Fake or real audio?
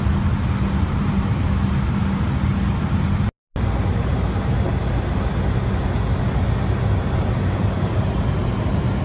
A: real